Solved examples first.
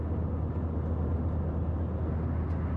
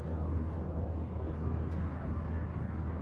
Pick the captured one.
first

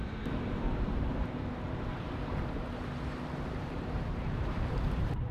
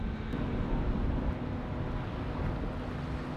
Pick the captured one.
second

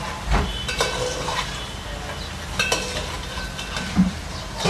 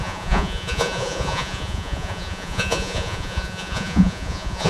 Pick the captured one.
first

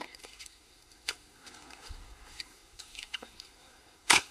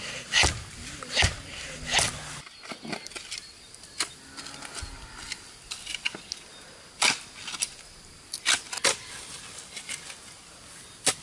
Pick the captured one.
second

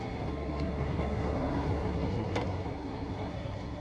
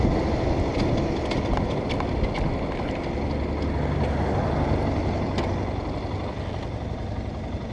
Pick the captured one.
second